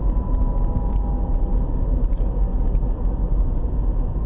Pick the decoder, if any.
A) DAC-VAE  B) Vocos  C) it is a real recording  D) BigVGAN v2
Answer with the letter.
C